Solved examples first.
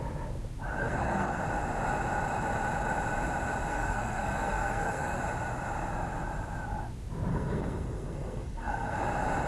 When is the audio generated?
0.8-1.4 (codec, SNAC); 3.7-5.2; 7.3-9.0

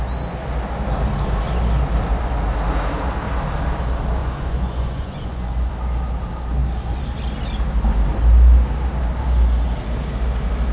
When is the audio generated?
4.2-5.7 (vocoder, Vocos)